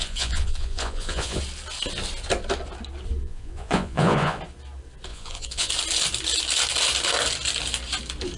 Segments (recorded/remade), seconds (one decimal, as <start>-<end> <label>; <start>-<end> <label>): 0.0-1.4 remade; 1.4-3.2 recorded; 3.2-4.4 remade; 4.4-5.1 recorded; 5.1-5.7 remade; 5.7-8.4 recorded